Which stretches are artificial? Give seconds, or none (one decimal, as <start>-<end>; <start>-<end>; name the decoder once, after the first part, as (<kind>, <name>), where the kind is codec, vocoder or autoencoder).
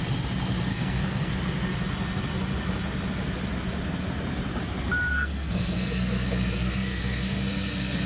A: 0.7-1.3 (codec, SNAC); 5.1-8.1